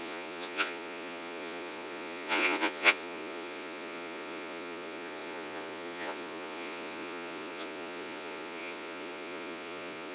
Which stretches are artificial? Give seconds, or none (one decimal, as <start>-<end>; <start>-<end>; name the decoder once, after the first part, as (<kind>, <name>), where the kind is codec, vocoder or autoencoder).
0.0-10.1 (vocoder, Vocos)